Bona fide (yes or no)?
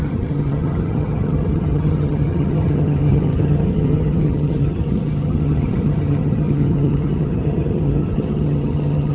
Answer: no